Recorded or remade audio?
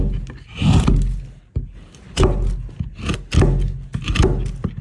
recorded